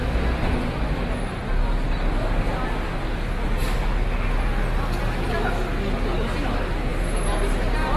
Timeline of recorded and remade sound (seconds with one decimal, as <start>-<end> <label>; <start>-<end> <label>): 0.0-8.0 recorded